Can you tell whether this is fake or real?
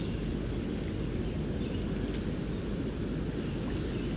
real